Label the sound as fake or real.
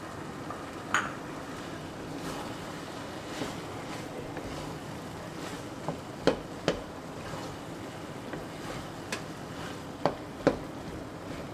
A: real